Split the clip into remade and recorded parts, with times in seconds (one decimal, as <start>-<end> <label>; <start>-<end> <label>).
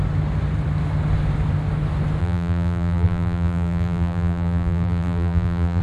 0.0-2.2 recorded; 2.2-5.8 remade